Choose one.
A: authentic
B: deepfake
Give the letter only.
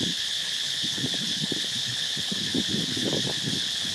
B